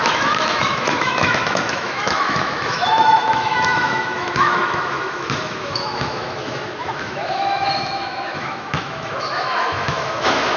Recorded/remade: remade